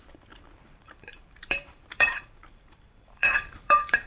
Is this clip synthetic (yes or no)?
yes